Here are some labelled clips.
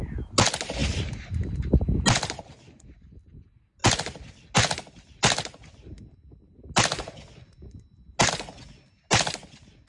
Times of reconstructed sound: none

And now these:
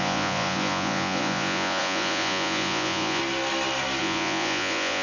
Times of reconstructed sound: 0.0-3.2 (vocoder, Vocos); 4.0-5.0

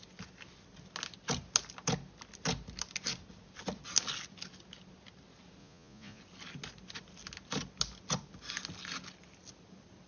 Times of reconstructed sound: 5.6-6.2 (vocoder, Vocos)

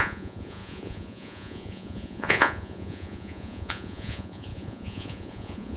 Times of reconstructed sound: 0.0-5.8 (vocoder, Vocos)

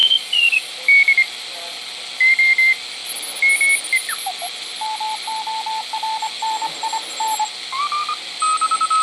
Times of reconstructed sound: 0.0-0.7 (vocoder, Vocos)

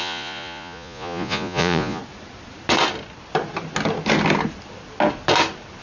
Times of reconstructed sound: 0.0-2.0 (vocoder, Vocos)